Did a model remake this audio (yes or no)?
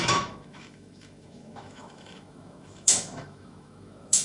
yes